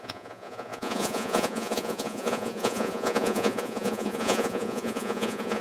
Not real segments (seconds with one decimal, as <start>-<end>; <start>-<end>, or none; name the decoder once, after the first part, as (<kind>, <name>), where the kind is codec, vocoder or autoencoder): 0.0-5.6 (vocoder, Vocos)